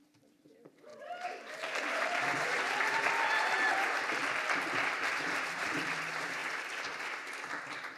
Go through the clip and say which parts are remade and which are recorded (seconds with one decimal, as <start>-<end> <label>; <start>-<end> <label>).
0.0-4.2 remade; 4.2-4.8 recorded; 4.8-8.0 remade